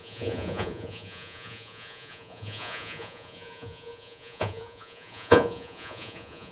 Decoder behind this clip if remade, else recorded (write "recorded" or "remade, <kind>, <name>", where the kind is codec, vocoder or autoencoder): remade, vocoder, Vocos